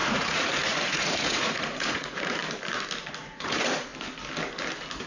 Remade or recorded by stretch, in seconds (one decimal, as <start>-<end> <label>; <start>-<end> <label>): 0.0-2.4 remade; 2.4-3.2 recorded; 3.2-3.9 remade; 3.9-5.1 recorded